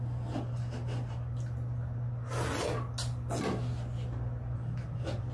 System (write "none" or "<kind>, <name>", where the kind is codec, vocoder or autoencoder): none